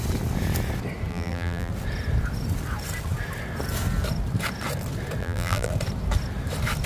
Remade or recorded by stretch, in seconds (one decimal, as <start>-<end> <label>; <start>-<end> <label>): 0.0-1.1 recorded; 1.1-1.7 remade; 1.7-5.2 recorded; 5.2-5.7 remade; 5.7-6.9 recorded